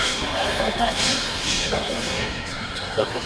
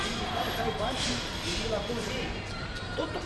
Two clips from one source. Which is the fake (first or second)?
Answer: first